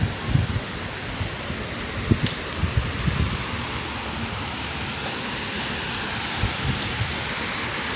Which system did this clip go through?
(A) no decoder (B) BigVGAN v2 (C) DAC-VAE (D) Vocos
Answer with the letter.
A